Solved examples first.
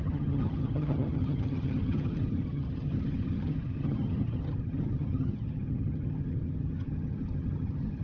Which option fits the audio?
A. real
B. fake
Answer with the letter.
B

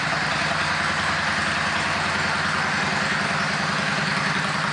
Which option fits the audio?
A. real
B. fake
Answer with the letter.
A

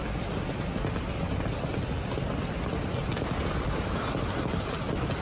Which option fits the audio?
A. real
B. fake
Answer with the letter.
A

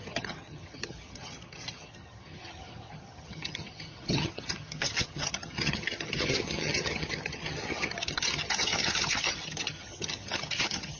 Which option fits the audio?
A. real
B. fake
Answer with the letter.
B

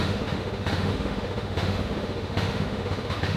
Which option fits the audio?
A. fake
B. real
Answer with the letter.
A